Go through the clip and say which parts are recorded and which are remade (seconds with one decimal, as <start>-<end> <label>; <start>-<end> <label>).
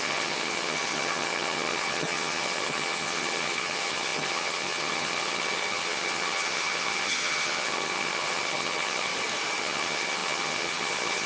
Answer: 0.0-9.1 remade; 9.1-9.6 recorded; 9.6-11.3 remade